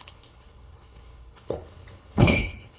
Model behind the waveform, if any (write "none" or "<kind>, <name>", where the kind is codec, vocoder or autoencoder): codec, HILCodec